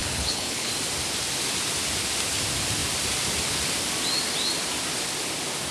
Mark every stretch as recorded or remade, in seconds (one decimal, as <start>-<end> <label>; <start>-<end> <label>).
0.0-0.7 remade; 0.7-5.7 recorded